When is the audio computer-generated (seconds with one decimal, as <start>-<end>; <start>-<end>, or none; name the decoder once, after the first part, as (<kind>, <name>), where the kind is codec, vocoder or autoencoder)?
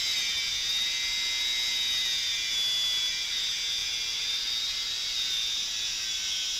none